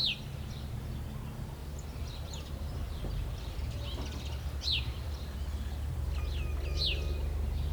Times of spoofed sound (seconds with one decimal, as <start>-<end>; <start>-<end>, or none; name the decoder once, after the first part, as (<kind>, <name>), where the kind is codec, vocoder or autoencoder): 1.6-6.2 (vocoder, BigVGAN v2)